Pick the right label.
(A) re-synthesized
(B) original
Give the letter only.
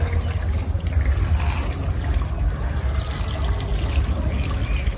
B